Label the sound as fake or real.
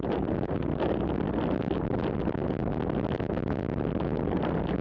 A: real